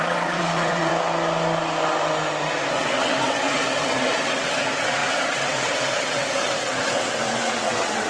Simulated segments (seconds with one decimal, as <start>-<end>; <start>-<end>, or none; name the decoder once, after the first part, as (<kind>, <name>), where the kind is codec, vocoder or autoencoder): 0.0-0.9 (vocoder, WaveNeXt); 2.7-8.1